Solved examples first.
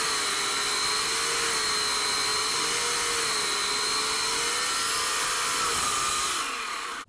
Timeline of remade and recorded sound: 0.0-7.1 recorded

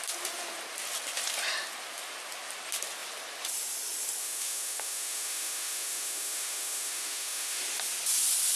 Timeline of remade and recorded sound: 0.0-4.2 recorded; 4.2-7.6 remade; 7.6-8.6 recorded

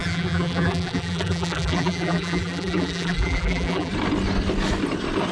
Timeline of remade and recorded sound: 0.0-3.9 remade; 3.9-5.3 recorded

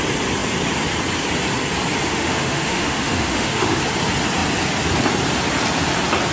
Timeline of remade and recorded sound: 0.0-2.1 recorded; 2.1-3.8 remade; 3.8-6.3 recorded

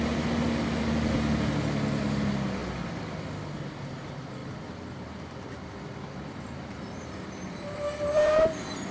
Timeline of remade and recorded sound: 0.0-4.4 recorded; 4.4-8.9 remade